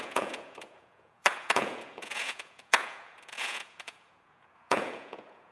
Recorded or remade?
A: remade